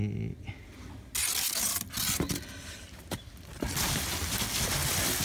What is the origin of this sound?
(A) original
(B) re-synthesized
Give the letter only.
A